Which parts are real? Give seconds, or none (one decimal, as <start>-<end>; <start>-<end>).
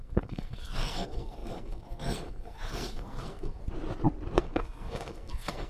3.6-4.4